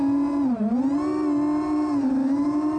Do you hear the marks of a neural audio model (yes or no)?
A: no